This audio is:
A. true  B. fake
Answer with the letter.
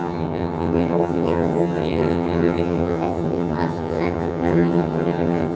B